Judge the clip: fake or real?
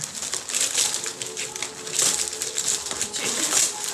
real